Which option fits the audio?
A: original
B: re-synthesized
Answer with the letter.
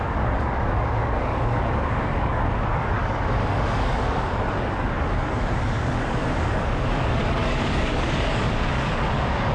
B